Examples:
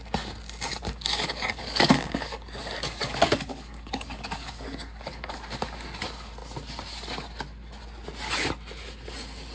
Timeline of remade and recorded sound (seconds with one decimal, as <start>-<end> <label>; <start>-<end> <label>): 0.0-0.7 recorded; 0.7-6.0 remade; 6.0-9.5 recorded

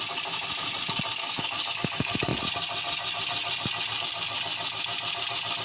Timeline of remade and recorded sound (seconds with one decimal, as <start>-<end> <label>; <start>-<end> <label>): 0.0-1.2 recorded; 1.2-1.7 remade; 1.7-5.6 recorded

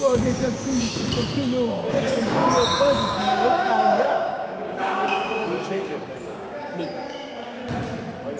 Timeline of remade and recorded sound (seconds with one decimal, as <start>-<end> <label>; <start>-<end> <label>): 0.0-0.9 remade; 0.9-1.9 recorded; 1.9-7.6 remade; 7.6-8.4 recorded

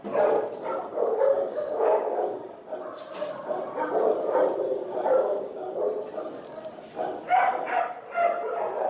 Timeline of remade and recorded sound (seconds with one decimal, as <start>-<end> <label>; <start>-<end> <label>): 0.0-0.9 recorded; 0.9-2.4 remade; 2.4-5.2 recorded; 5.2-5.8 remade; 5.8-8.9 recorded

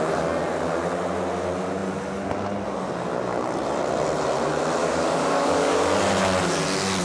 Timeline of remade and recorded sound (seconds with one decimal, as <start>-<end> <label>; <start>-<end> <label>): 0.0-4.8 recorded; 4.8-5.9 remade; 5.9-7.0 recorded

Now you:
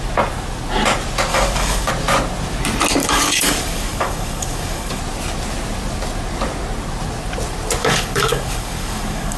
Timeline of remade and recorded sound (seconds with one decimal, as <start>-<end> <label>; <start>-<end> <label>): 0.0-1.3 recorded; 1.3-1.9 remade; 1.9-3.0 recorded; 3.0-5.0 remade; 5.0-7.8 recorded; 7.8-9.4 remade

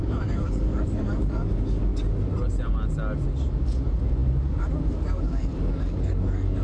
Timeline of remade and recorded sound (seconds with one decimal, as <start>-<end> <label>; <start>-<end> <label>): 0.0-1.9 remade; 1.9-3.5 recorded; 3.5-6.6 remade

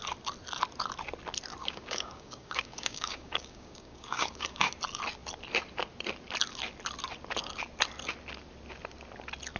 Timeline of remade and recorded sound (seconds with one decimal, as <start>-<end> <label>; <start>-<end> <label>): 0.0-1.6 recorded; 1.6-4.7 remade; 4.7-9.6 recorded